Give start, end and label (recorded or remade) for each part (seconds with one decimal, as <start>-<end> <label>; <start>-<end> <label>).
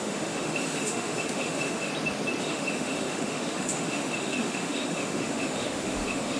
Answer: 0.0-1.9 remade; 1.9-2.4 recorded; 2.4-6.4 remade